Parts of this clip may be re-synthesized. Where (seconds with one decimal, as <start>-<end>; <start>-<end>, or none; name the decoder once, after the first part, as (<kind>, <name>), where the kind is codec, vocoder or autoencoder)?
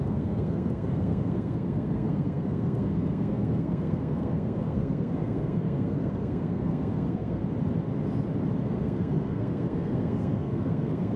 0.0-7.4 (codec, SNAC); 8.6-11.2